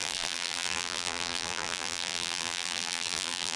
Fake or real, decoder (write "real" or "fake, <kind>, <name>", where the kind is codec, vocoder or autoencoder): fake, vocoder, BigVGAN v2